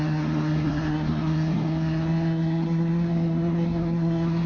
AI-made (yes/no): yes